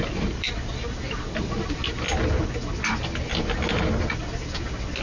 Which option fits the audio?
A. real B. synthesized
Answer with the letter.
A